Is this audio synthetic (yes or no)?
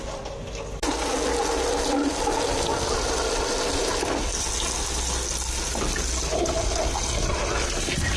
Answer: no